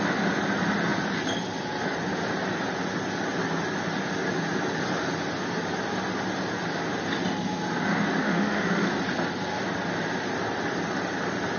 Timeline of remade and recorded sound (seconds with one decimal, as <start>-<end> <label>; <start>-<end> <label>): 0.0-8.2 recorded; 8.2-8.9 remade; 8.9-11.6 recorded